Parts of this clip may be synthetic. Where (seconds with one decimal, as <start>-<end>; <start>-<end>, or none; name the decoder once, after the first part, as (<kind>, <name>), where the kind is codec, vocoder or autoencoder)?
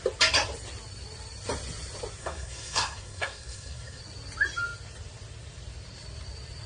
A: 2.2-4.0 (codec, SNAC)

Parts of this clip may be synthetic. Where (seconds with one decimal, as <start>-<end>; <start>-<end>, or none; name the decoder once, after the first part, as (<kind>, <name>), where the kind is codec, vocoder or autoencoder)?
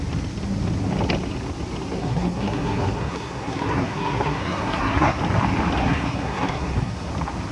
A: 2.0-5.2 (codec, SNAC); 5.8-7.1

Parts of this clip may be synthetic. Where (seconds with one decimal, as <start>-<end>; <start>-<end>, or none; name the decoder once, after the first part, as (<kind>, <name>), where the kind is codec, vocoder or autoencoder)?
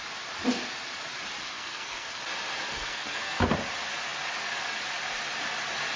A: 1.4-2.2 (codec, SNAC); 2.7-3.4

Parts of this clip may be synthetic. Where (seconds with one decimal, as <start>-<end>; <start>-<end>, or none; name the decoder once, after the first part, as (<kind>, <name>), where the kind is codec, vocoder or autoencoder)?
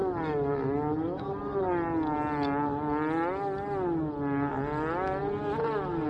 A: none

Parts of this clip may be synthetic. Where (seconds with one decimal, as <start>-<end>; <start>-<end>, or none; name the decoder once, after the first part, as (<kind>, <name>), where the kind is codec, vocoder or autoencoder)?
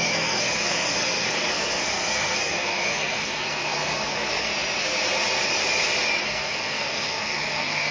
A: 0.0-4.5 (codec, SNAC); 6.2-7.9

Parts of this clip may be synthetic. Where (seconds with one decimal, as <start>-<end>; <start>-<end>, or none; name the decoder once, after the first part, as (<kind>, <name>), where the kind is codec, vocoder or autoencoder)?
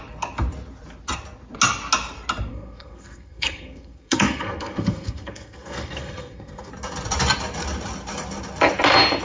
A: 2.5-6.7 (codec, SNAC)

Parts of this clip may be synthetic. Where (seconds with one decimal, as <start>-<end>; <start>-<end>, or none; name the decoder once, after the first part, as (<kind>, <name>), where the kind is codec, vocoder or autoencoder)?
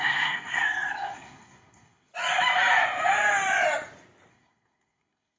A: 0.0-2.1 (codec, SNAC); 4.3-5.4